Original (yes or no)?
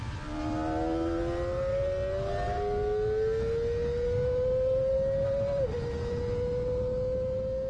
yes